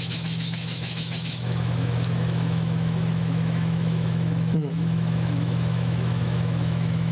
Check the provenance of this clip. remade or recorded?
remade